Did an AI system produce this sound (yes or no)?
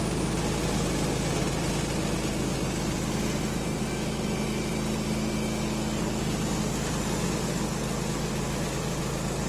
no